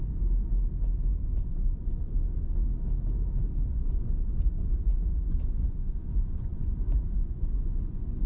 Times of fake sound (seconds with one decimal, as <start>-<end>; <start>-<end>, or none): 1.2-2.5; 3.7-8.3